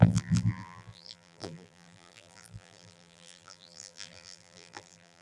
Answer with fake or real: fake